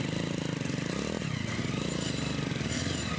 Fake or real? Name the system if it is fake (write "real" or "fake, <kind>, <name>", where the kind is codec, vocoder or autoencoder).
real